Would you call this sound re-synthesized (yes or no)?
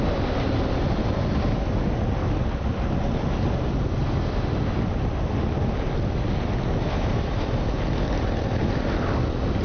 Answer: no